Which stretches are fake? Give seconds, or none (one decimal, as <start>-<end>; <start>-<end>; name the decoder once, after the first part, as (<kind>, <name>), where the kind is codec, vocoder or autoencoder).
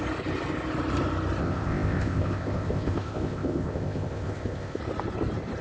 1.4-4.8 (codec, ZipCodec)